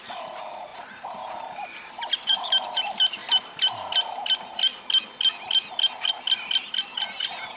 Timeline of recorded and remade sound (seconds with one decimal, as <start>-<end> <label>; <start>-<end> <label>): 0.0-0.7 recorded; 0.7-2.8 remade; 2.8-7.6 recorded